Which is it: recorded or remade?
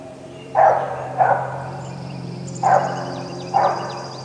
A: remade